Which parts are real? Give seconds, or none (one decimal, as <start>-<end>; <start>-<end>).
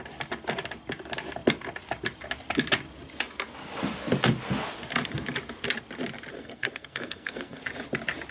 0.0-6.3; 7.6-8.3